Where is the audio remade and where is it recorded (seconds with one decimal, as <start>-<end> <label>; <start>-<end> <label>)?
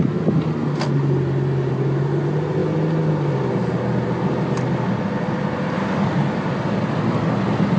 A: 0.0-7.8 recorded